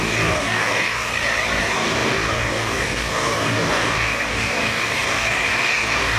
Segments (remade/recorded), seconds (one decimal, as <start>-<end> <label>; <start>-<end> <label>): 0.0-1.1 remade; 1.1-1.6 recorded; 1.6-6.2 remade